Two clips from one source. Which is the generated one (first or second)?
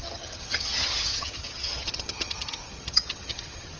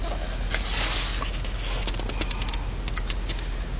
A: first